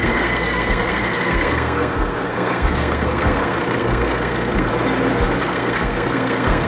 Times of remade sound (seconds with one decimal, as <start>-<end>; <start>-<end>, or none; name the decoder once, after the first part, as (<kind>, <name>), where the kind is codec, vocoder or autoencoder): 0.0-4.7 (codec, SNAC); 5.4-6.7